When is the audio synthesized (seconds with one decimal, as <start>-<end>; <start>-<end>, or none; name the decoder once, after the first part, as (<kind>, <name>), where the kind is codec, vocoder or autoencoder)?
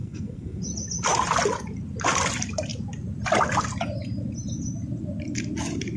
0.0-0.6 (codec, SNAC)